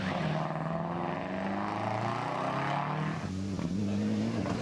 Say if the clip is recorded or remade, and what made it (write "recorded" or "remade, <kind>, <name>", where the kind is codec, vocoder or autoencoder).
recorded